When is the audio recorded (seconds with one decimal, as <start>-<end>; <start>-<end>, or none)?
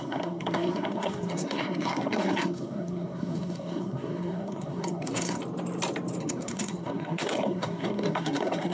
5.4-6.2